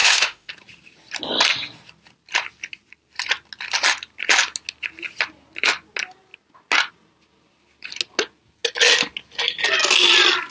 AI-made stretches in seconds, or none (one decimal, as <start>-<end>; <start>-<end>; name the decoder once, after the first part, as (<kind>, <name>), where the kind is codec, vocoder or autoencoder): 0.0-0.5 (autoencoder, DAC-VAE)